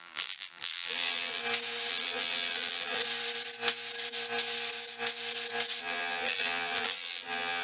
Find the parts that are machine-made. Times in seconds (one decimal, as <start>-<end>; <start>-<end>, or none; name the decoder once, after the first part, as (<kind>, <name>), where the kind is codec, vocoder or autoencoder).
0.0-1.4 (vocoder, BigVGAN v2); 1.9-3.0; 5.8-7.6